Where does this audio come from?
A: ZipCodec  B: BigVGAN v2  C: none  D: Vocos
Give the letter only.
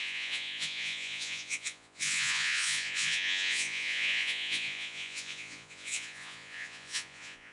D